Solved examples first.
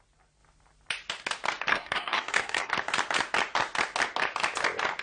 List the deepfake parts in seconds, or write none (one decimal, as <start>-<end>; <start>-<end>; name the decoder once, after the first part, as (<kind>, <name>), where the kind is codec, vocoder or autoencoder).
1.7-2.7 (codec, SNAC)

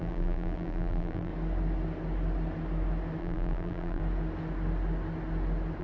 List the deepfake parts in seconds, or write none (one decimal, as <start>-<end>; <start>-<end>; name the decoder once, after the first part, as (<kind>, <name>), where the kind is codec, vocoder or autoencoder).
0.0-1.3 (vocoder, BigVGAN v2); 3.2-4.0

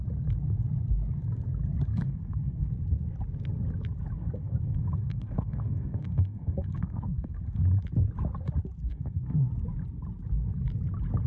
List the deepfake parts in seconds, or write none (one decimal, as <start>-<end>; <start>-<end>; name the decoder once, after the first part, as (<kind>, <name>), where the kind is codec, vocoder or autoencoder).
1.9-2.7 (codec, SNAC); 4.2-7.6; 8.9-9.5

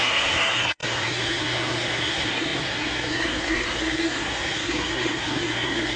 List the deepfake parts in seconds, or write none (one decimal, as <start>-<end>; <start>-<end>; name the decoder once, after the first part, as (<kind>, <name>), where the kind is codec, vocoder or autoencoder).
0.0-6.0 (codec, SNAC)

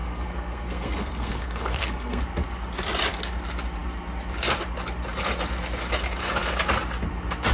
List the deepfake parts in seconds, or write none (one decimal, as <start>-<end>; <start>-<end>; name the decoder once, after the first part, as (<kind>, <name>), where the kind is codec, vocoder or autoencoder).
0.0-2.2 (codec, SNAC)

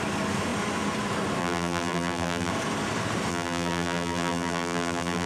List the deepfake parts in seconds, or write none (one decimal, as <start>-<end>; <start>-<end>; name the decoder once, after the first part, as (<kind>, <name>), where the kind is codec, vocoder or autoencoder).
1.4-2.5 (vocoder, BigVGAN v2); 3.3-5.3